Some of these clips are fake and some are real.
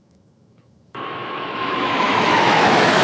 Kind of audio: fake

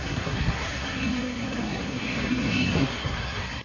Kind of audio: fake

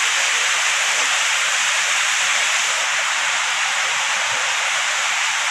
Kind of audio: fake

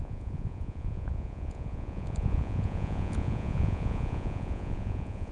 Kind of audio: fake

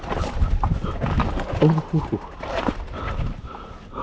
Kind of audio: real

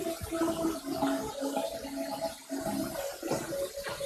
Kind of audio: real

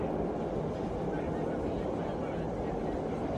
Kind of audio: real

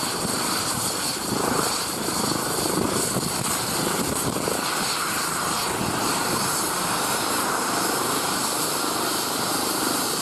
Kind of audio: fake